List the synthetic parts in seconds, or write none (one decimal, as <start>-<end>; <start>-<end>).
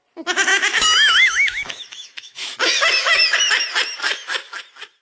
0.5-3.5; 4.0-4.6